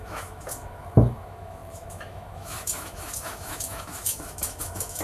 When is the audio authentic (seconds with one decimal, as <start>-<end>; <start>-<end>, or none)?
none